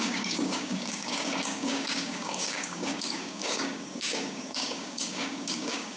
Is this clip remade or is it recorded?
remade